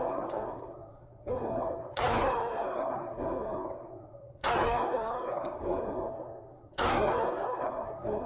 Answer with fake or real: fake